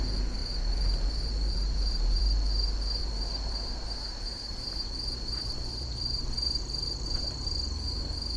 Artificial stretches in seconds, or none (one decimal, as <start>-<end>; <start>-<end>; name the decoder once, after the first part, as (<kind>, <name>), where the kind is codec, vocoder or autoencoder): 0.4-2.2 (vocoder, BigVGAN v2); 3.0-8.0